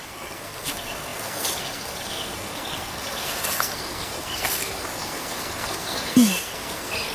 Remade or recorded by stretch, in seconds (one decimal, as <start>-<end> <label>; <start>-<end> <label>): 0.0-7.1 remade